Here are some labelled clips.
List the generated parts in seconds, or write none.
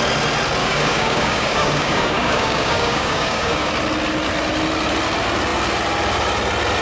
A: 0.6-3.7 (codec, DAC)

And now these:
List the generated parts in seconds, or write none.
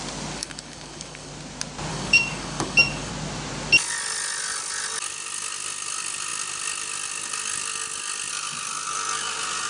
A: 0.4-1.3 (codec, DAC); 1.9-3.1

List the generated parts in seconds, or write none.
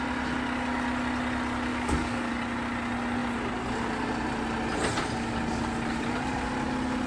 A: 1.7-2.3 (codec, DAC)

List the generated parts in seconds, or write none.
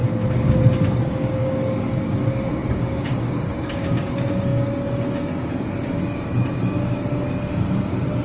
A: 0.0-8.2 (codec, DAC)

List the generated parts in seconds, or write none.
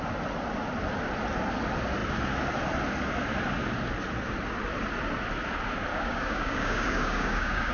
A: 5.9-7.7 (codec, DAC)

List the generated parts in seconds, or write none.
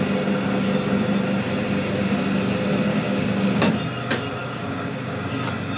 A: 2.9-3.7 (codec, DAC); 4.4-5.3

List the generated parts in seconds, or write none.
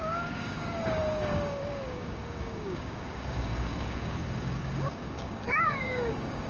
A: 0.0-6.5 (codec, DAC)